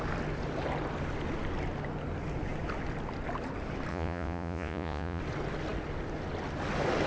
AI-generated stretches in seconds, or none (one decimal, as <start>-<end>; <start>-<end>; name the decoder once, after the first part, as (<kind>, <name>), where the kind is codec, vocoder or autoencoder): 3.9-5.2 (vocoder, Vocos)